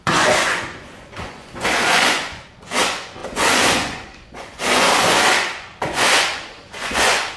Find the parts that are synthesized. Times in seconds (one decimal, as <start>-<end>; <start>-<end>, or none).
0.0-7.4